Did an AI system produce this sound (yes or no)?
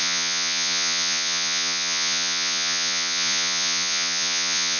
yes